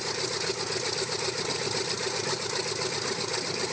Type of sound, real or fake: real